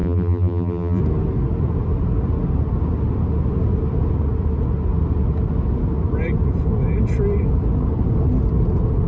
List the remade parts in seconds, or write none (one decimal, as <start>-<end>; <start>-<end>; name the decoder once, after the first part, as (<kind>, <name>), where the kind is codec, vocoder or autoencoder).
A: 0.0-1.0 (vocoder, BigVGAN v2)